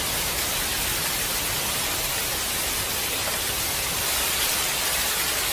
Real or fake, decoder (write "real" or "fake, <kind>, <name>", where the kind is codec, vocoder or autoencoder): real